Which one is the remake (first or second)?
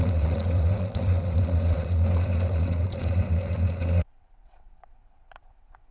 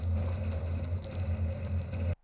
first